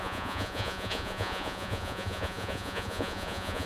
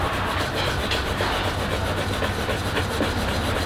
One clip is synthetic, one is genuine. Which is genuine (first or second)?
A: second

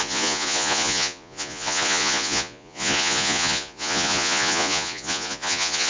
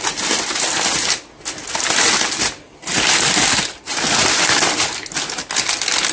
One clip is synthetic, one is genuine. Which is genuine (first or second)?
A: second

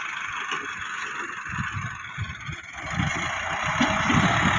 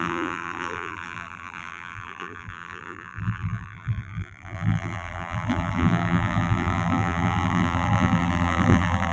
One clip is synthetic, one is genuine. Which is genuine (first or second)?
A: first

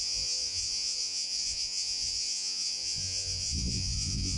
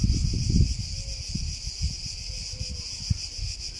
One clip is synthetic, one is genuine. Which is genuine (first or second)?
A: second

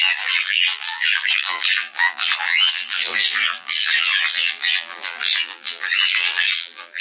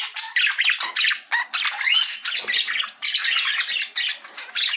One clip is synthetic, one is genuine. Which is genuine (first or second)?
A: second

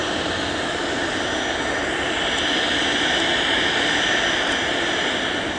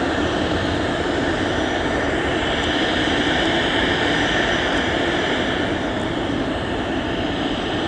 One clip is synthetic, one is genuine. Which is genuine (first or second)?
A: first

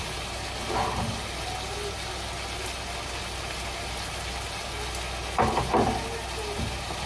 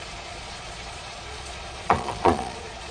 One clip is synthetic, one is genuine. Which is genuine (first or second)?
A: first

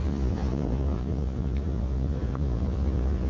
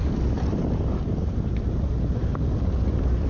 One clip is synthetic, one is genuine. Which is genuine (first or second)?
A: second